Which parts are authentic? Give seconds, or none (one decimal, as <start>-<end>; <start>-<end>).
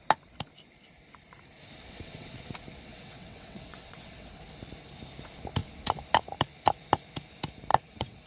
0.0-1.9; 2.5-2.9; 4.3-7.7